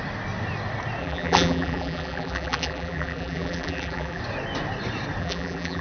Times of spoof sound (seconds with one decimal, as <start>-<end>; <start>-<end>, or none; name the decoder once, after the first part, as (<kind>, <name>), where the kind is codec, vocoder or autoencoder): 1.0-4.2 (vocoder, BigVGAN v2); 5.2-5.8